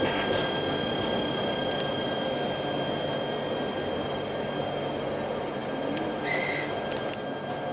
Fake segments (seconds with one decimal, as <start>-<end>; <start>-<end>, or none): none